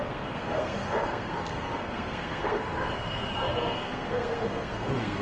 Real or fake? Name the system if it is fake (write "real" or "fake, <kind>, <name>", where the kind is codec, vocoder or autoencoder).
fake, codec, SNAC